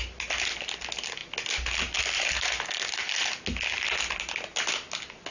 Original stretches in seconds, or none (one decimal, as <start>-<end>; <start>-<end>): 0.0-5.3